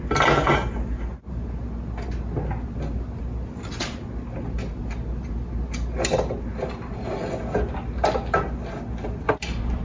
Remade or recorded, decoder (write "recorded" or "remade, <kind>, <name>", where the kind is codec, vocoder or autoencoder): recorded